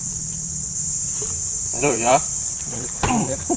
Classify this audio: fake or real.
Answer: fake